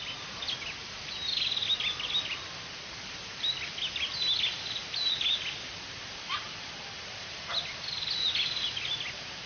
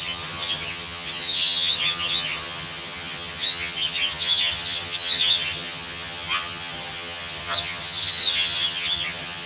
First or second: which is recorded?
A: first